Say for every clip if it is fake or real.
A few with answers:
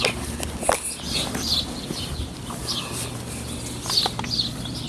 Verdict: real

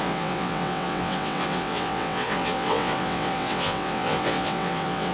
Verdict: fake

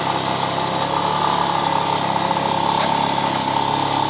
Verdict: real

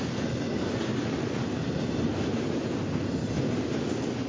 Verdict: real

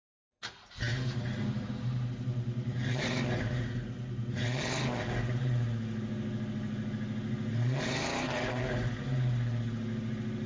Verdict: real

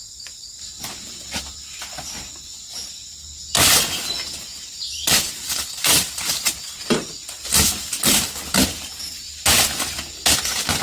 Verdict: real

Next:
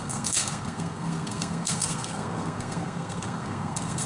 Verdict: fake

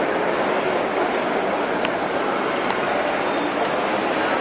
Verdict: real